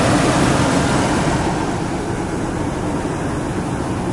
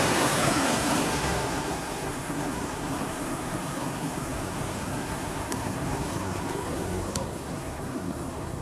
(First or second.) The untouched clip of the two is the first